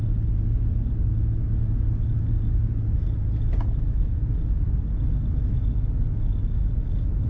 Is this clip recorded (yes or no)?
yes